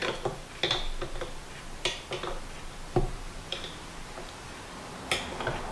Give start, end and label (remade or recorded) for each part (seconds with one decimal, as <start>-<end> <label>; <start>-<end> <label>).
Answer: 0.0-5.7 recorded